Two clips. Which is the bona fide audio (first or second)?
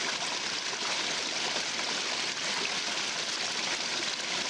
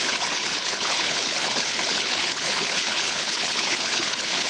first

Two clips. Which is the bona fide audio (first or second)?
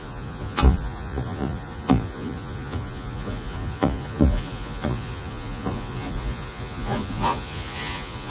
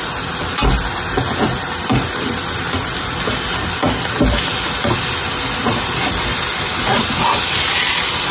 second